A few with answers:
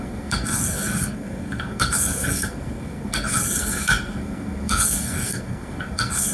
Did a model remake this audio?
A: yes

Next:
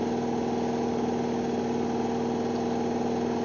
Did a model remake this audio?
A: no